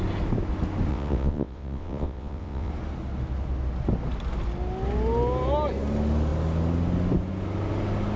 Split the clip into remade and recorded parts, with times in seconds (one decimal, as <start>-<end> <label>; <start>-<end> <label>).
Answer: 0.0-0.9 recorded; 0.9-2.7 remade; 2.7-8.2 recorded